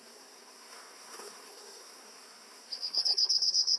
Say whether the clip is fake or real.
fake